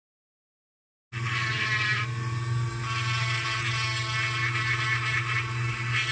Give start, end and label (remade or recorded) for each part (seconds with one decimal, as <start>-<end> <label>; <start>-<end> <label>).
0.0-6.1 recorded